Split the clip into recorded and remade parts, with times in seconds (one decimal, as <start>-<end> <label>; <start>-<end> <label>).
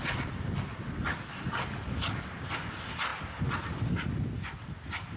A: 0.0-5.2 recorded